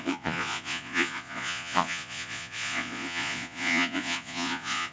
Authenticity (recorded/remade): remade